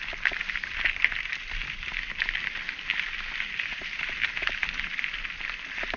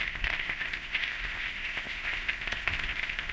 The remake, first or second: second